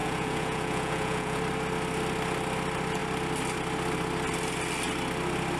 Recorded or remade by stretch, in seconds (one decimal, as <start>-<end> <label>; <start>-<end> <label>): 0.0-1.4 remade; 1.4-5.6 recorded